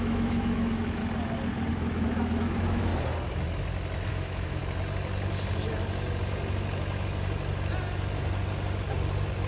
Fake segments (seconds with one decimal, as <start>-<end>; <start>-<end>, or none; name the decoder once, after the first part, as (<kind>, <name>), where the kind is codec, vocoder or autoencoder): 0.0-1.0 (autoencoder, DAC-VAE); 1.7-2.9; 4.1-4.6